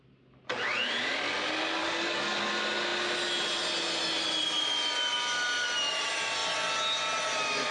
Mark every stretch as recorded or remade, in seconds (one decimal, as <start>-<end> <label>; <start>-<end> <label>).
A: 0.0-1.8 recorded; 1.8-2.5 remade; 2.5-7.7 recorded